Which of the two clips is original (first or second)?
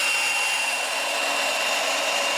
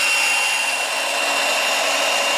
second